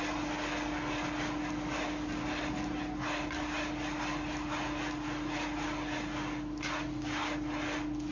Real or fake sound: real